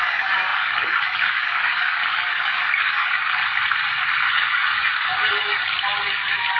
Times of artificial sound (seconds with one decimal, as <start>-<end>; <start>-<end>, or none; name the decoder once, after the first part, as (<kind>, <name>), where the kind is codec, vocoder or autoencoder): 0.0-3.4 (codec, DAC); 4.3-6.6